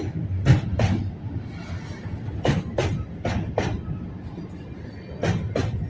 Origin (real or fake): real